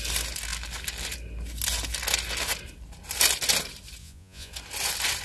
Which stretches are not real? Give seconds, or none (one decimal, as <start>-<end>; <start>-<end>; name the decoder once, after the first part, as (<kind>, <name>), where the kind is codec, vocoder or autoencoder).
4.0-4.5 (vocoder, Vocos)